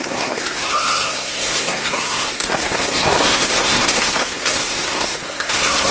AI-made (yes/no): yes